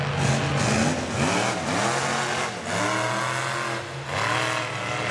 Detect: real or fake real